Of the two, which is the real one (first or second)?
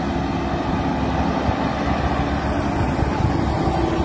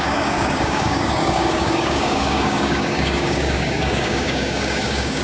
first